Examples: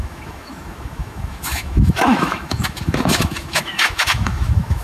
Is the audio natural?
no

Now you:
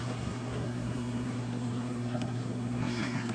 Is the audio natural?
no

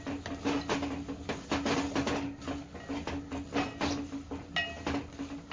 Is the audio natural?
yes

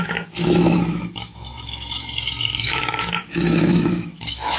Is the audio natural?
no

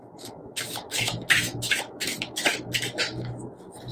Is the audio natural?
no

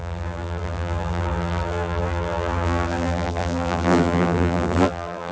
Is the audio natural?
no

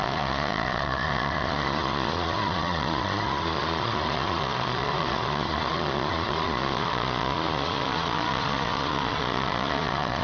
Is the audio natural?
no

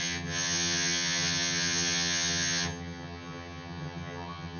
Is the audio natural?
no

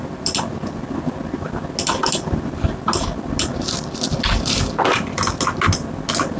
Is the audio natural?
yes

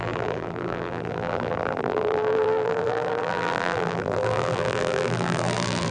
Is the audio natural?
no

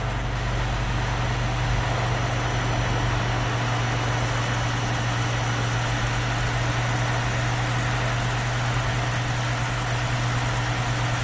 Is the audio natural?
yes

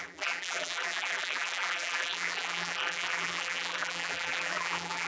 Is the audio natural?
no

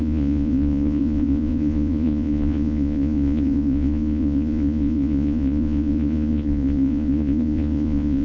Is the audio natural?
no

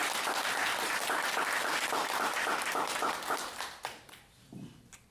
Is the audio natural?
yes